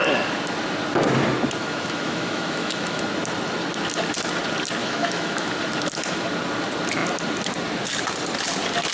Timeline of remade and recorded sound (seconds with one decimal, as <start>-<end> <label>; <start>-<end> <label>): 0.0-1.6 recorded; 1.6-3.0 remade; 3.0-4.8 recorded; 4.8-5.5 remade; 5.5-8.9 recorded